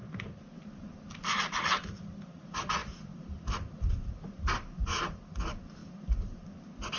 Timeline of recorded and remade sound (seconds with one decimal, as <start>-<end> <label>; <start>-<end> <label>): 0.0-2.8 recorded; 2.8-5.3 remade; 5.3-5.8 recorded; 5.8-6.5 remade; 6.5-7.0 recorded